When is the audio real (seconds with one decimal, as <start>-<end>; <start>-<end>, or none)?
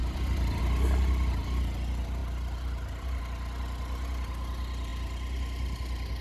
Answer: 0.6-2.2; 3.2-6.2